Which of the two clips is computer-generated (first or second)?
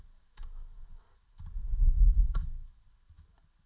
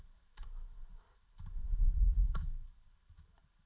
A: second